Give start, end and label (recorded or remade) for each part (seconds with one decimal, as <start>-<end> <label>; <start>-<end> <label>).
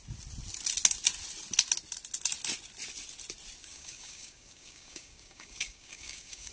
0.0-3.6 recorded; 3.6-6.5 remade